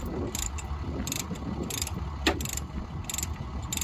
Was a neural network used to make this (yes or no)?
no